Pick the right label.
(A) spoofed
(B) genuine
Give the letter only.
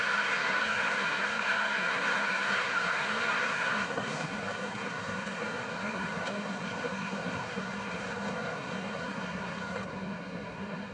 A